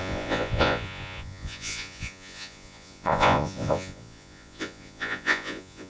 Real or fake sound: fake